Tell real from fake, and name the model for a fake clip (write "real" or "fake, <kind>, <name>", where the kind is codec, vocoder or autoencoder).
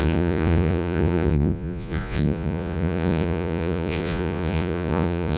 fake, vocoder, Vocos